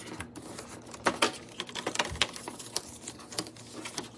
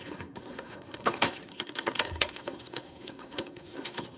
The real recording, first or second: first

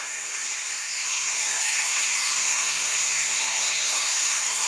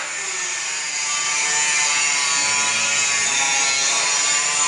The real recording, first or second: second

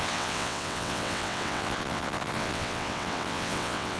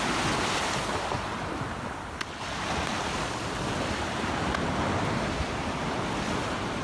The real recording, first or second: second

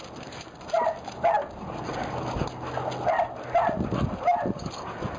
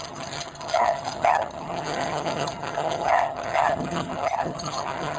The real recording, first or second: first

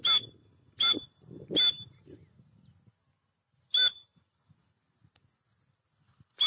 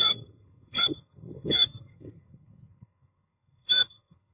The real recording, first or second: first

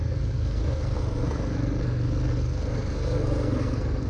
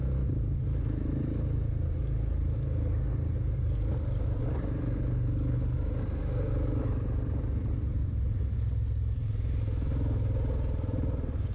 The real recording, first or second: second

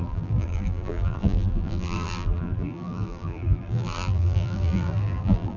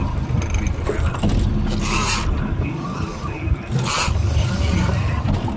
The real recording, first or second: second